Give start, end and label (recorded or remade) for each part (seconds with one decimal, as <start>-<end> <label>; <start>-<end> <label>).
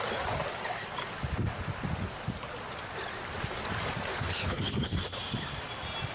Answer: 0.0-4.1 recorded; 4.1-5.0 remade; 5.0-6.1 recorded